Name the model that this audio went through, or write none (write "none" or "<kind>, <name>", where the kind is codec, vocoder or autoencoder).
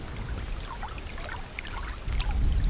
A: none